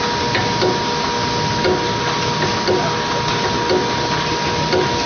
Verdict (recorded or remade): recorded